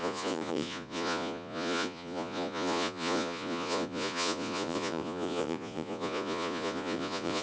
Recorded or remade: remade